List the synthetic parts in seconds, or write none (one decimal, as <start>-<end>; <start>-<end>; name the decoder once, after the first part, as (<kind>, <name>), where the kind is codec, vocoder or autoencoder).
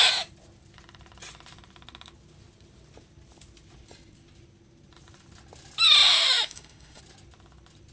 6.1-7.0 (autoencoder, DAC-VAE)